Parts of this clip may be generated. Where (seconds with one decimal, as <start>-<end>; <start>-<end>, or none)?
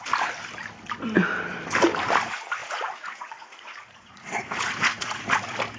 2.6-5.3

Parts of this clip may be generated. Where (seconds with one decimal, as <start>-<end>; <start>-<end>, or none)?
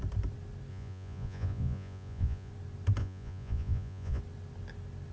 0.7-2.5; 3.0-4.2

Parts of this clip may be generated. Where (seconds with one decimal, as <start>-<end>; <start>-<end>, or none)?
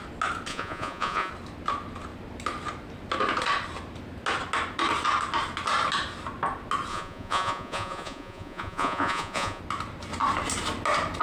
0.5-1.3; 6.9-9.6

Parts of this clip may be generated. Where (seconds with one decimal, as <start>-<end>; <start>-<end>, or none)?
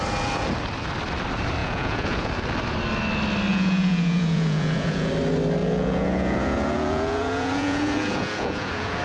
1.6-2.3; 3.5-5.1; 5.6-9.0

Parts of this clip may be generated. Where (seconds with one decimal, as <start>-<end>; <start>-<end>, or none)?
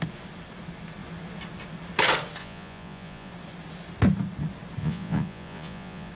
2.4-3.3; 4.8-6.1